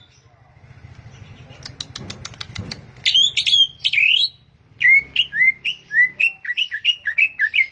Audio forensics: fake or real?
real